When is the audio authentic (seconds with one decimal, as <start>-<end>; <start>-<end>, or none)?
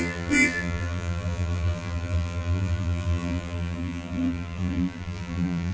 none